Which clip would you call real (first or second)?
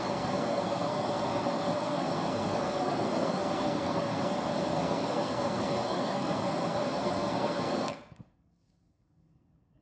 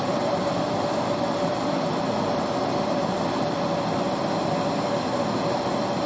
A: second